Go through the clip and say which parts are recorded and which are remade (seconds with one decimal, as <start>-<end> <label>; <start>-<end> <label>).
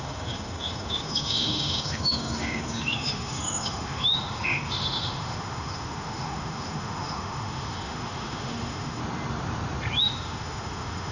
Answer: 0.0-9.0 remade; 9.0-10.0 recorded; 10.0-11.1 remade